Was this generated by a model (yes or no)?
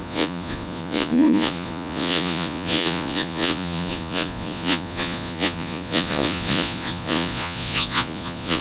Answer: yes